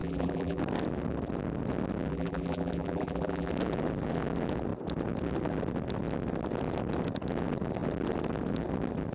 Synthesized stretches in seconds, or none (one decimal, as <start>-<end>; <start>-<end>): 0.0-0.6; 2.1-3.5